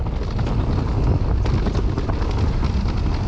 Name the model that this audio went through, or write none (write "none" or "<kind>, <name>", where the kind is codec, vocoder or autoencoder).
none